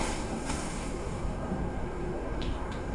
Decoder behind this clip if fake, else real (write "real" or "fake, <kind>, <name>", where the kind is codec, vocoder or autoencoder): fake, codec, SNAC